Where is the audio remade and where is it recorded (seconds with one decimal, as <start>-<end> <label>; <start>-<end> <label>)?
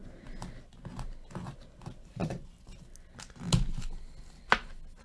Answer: 0.0-5.0 recorded